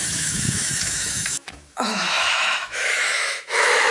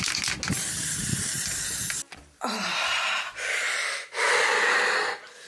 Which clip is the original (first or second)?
second